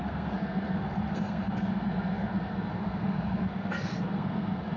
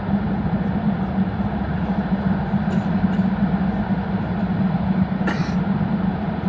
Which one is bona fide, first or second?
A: second